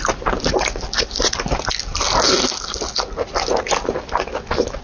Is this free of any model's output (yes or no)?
yes